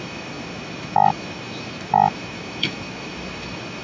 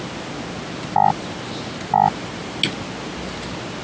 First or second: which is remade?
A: first